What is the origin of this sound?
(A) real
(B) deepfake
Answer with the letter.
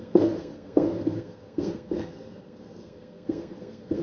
B